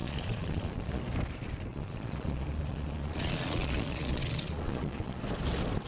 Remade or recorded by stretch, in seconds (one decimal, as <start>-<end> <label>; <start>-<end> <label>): 0.0-1.0 remade; 1.0-1.7 recorded; 1.7-5.2 remade; 5.2-5.9 recorded

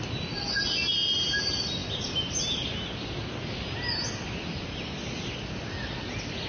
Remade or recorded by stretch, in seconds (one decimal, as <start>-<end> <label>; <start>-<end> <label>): 0.0-6.5 recorded

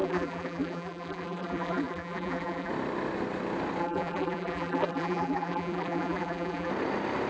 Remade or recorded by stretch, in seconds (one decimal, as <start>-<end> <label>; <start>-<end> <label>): 0.0-2.7 remade; 2.7-3.8 recorded; 3.8-6.7 remade; 6.7-7.3 recorded

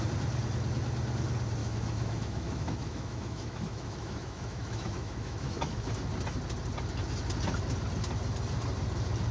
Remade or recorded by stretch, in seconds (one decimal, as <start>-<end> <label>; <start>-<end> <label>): 0.0-1.6 recorded; 1.6-5.9 remade; 5.9-9.3 recorded

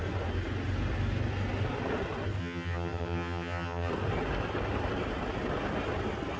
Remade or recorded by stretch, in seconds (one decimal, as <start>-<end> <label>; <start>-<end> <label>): 0.0-2.4 recorded; 2.4-3.9 remade; 3.9-6.4 recorded

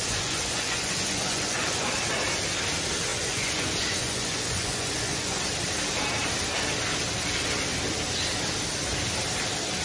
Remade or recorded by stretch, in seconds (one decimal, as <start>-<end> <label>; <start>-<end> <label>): 0.0-1.9 remade; 1.9-3.1 recorded; 3.1-5.4 remade; 5.4-9.8 recorded

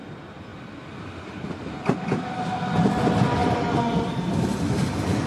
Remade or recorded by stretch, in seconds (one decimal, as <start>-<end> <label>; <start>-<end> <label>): 0.0-5.3 recorded